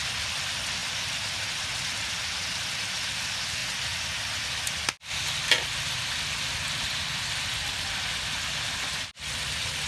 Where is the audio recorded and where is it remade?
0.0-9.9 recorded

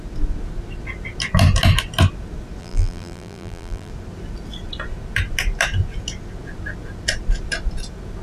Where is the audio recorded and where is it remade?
0.0-2.6 recorded; 2.6-3.9 remade; 3.9-8.2 recorded

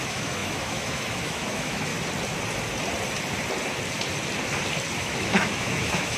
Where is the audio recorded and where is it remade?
0.0-1.9 remade; 1.9-5.0 recorded; 5.0-6.2 remade

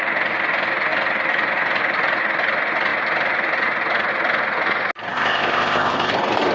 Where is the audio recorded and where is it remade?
0.0-5.1 recorded; 5.1-6.1 remade; 6.1-6.5 recorded

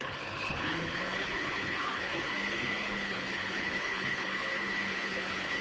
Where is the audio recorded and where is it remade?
0.0-5.6 remade

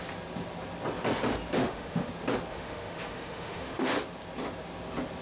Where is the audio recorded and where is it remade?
0.0-1.6 recorded; 1.6-2.1 remade; 2.1-2.5 recorded; 2.5-4.0 remade; 4.0-5.2 recorded

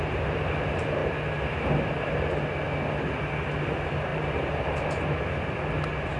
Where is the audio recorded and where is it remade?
0.0-4.1 recorded; 4.1-5.2 remade; 5.2-6.2 recorded